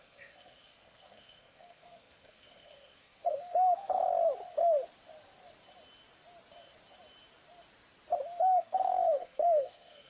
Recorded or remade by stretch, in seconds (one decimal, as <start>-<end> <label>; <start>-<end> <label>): 0.0-4.0 remade; 4.0-8.4 recorded; 8.4-10.1 remade